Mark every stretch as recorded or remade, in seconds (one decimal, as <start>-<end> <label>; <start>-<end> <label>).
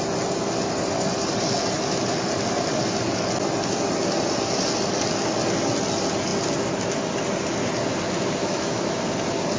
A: 0.0-8.4 recorded; 8.4-9.0 remade; 9.0-9.6 recorded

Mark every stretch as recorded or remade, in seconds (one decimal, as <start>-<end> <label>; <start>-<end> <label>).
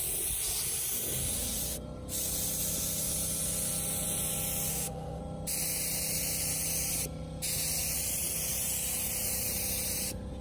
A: 0.0-4.7 recorded; 4.7-5.2 remade; 5.2-10.4 recorded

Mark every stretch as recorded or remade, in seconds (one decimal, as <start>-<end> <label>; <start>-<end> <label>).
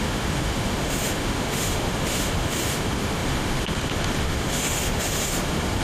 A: 0.0-5.8 remade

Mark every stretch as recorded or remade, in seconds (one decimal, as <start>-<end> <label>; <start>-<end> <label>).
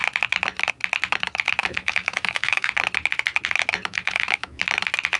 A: 0.0-1.6 recorded; 1.6-2.7 remade; 2.7-3.9 recorded; 3.9-4.6 remade; 4.6-5.2 recorded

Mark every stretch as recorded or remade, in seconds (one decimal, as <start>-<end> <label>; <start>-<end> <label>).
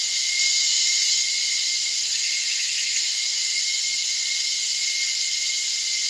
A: 0.0-0.6 recorded; 0.6-1.2 remade; 1.2-1.6 recorded; 1.6-3.8 remade; 3.8-6.1 recorded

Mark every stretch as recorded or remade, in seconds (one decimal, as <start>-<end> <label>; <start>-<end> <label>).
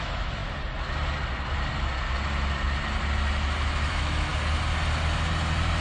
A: 0.0-0.4 remade; 0.4-3.9 recorded; 3.9-4.3 remade; 4.3-5.8 recorded